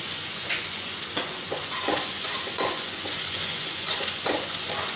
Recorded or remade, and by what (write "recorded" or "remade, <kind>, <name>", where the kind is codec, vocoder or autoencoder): remade, vocoder, Vocos